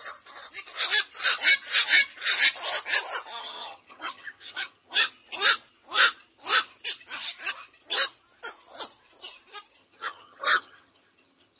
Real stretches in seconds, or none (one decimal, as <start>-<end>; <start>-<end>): 0.0-3.4; 5.1-9.8